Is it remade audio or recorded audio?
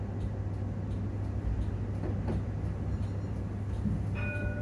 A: recorded